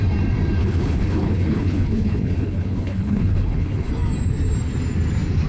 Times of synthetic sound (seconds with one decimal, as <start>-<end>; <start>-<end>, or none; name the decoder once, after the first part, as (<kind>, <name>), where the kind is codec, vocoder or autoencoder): 0.6-3.9 (codec, HILCodec)